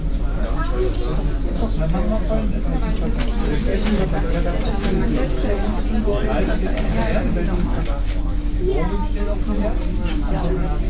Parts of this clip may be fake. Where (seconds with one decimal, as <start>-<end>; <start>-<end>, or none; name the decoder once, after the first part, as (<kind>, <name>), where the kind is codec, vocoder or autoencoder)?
none